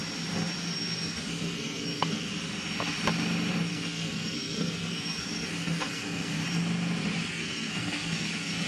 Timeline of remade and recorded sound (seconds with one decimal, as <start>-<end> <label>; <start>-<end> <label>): 0.0-0.6 recorded; 0.6-2.3 remade; 2.3-3.7 recorded; 3.7-6.4 remade; 6.4-7.3 recorded; 7.3-8.7 remade